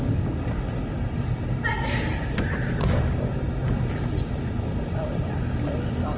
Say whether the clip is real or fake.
real